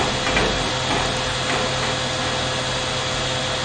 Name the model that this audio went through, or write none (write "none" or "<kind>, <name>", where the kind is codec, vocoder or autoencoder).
none